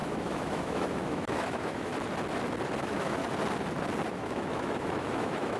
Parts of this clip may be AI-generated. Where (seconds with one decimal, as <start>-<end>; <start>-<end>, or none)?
0.0-1.9; 2.8-3.2; 4.1-5.6